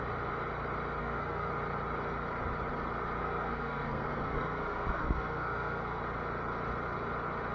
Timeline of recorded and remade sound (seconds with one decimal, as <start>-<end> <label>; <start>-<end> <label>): 0.0-1.0 recorded; 1.0-1.5 remade; 1.5-3.2 recorded; 3.2-6.0 remade; 6.0-7.5 recorded